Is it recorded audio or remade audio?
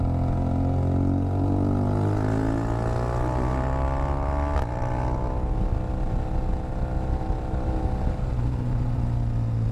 recorded